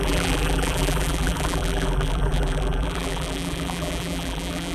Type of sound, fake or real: fake